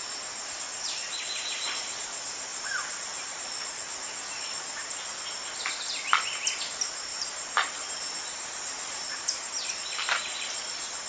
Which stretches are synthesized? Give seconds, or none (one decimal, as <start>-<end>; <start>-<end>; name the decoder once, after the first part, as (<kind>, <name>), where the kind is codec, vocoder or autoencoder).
7.1-9.5 (vocoder, BigVGAN v2)